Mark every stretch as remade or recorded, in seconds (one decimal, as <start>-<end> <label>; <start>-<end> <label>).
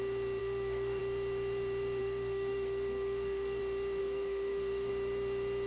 0.0-0.4 recorded; 0.4-1.0 remade; 1.0-2.0 recorded; 2.0-3.6 remade; 3.6-4.0 recorded; 4.0-4.9 remade; 4.9-5.7 recorded